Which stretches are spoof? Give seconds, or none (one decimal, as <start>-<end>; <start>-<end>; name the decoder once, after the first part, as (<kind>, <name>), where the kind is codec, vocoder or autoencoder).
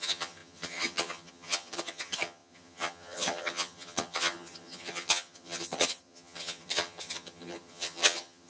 0.0-8.5 (vocoder, HiFi-GAN)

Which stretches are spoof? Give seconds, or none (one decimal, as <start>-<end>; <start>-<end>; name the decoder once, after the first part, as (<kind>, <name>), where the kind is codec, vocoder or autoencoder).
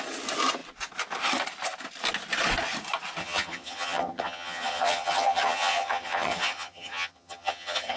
3.2-8.0 (vocoder, HiFi-GAN)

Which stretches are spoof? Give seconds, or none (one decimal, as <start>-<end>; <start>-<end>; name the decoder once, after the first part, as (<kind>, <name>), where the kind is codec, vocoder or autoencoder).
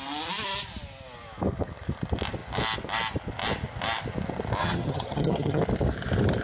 4.6-5.6 (vocoder, HiFi-GAN)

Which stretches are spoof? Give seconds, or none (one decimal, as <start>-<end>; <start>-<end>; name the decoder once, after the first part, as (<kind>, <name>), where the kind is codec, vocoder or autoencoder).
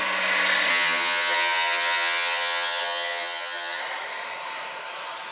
0.7-3.8 (vocoder, HiFi-GAN)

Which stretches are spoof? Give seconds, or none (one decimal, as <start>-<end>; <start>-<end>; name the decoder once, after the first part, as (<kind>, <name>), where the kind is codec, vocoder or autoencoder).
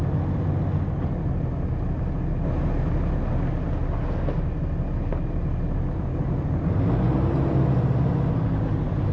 none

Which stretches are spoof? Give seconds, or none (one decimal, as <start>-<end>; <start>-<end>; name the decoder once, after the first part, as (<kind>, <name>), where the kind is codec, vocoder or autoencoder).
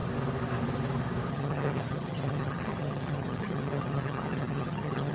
1.3-5.1 (vocoder, HiFi-GAN)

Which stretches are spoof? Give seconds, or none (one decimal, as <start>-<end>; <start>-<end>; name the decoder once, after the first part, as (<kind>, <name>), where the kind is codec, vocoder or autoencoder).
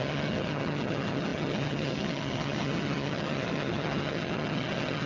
0.0-5.1 (vocoder, HiFi-GAN)